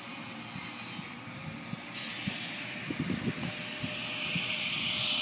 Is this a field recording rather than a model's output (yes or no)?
yes